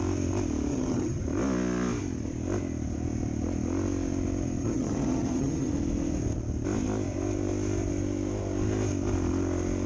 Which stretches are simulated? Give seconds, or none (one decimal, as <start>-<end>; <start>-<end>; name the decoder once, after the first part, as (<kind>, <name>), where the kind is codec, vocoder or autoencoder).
0.7-1.2 (vocoder, HiFi-GAN); 4.6-5.7